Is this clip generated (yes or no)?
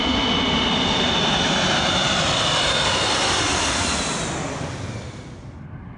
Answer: yes